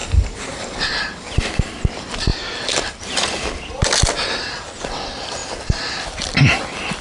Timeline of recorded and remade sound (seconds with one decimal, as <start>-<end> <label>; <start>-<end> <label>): 0.0-1.3 remade; 1.3-7.0 recorded